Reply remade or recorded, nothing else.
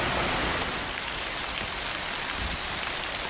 recorded